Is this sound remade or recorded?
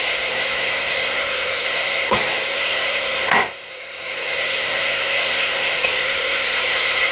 remade